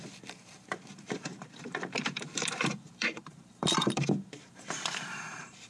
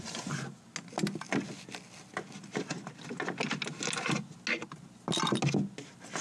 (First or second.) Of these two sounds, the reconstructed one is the first